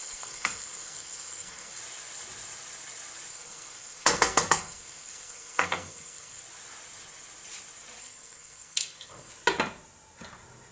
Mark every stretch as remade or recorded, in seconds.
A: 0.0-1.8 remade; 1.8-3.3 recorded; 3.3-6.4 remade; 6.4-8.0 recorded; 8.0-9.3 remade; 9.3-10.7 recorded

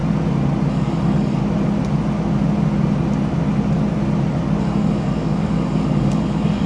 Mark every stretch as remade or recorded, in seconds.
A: 0.0-0.7 recorded; 0.7-1.4 remade; 1.4-4.6 recorded; 4.6-6.7 remade

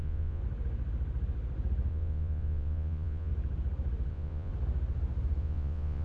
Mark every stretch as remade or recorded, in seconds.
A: 0.0-0.4 remade; 0.4-1.9 recorded; 1.9-3.3 remade; 3.3-4.1 recorded; 4.1-4.5 remade; 4.5-5.4 recorded; 5.4-6.0 remade

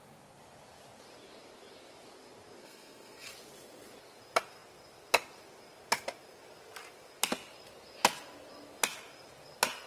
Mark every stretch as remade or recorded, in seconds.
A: 0.0-2.6 recorded; 2.6-3.3 remade; 3.3-9.9 recorded

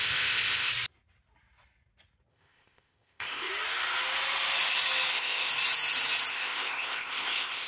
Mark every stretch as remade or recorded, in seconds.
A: 0.0-0.7 remade; 0.7-2.3 recorded; 2.3-3.5 remade; 3.5-5.1 recorded; 5.1-5.5 remade; 5.5-6.3 recorded; 6.3-7.7 remade

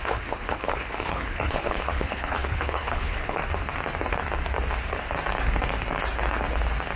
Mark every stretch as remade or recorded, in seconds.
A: 0.0-3.4 remade; 3.4-7.0 recorded